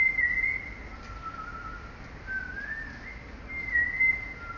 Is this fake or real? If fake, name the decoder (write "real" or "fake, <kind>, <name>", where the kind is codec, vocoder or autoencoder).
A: real